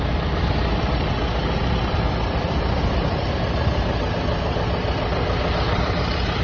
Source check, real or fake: real